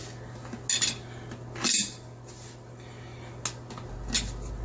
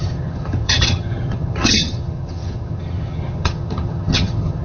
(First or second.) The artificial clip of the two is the second